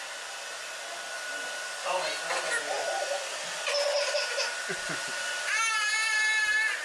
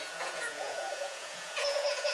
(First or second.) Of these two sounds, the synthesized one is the second